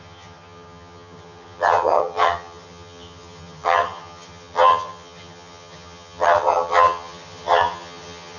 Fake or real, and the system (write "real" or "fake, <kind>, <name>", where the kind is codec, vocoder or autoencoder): fake, vocoder, HiFi-GAN